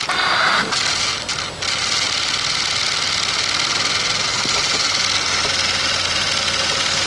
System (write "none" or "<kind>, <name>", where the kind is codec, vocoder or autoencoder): none